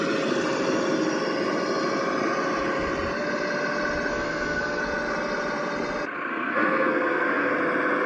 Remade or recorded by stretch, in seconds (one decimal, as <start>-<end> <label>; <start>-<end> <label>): 0.0-4.1 recorded; 4.1-4.8 remade; 4.8-6.3 recorded; 6.3-7.5 remade; 7.5-8.1 recorded

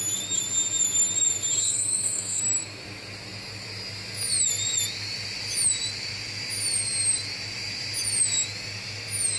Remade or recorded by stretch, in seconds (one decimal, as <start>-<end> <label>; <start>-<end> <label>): 0.0-1.6 recorded; 1.6-2.4 remade; 2.4-9.4 recorded

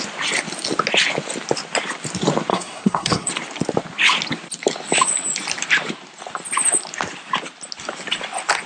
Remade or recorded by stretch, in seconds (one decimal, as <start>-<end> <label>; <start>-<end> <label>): 0.0-2.5 recorded; 2.5-3.3 remade; 3.3-8.7 recorded